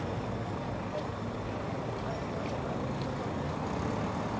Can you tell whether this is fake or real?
real